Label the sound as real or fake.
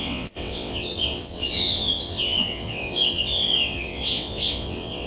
fake